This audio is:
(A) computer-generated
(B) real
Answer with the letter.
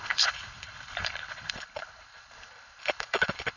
A